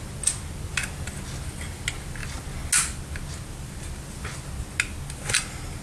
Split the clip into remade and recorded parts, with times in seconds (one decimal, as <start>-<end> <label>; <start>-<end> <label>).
0.0-5.8 recorded